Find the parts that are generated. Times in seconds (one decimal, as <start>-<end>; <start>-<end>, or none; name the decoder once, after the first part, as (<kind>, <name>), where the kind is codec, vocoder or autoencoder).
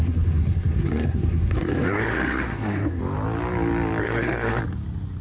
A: 0.0-3.0 (codec, SNAC); 4.0-4.6